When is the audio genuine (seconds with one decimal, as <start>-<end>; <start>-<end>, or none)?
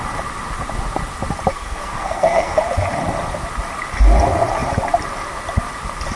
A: 0.0-1.5; 2.6-6.2